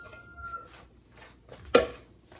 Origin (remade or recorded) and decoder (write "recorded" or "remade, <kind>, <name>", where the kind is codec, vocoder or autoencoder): recorded